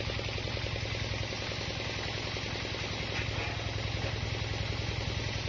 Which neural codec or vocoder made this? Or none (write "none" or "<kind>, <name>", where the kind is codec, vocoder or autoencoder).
none